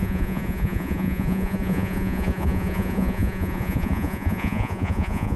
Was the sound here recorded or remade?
remade